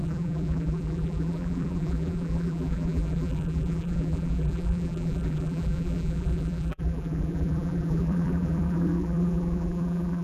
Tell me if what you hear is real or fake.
fake